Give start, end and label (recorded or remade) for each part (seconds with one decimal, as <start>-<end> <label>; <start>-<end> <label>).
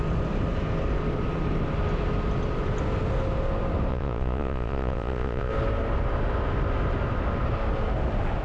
0.0-3.9 recorded; 3.9-5.5 remade; 5.5-8.4 recorded